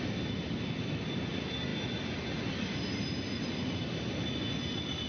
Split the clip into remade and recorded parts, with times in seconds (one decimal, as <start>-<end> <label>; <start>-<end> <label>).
0.0-5.1 recorded